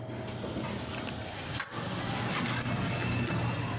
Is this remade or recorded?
recorded